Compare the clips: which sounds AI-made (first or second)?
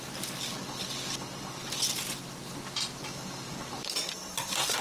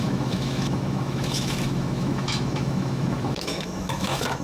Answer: second